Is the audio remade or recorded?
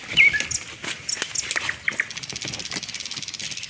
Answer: recorded